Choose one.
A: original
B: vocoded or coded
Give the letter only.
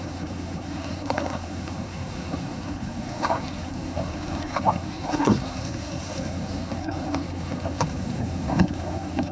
B